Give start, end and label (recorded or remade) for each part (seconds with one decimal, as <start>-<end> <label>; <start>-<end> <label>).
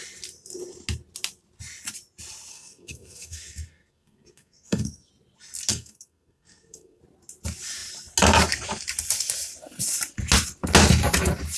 0.0-2.5 recorded; 2.5-5.1 remade; 5.1-5.7 recorded; 5.7-7.0 remade; 7.0-11.6 recorded